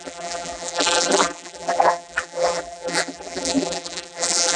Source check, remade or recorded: remade